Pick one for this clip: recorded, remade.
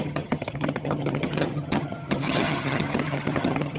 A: remade